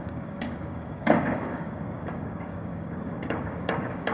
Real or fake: fake